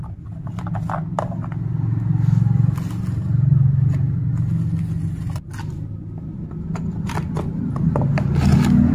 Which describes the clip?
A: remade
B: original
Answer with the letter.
B